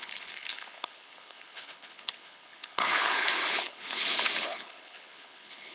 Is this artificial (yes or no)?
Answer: yes